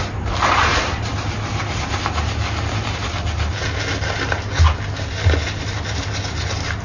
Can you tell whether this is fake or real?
real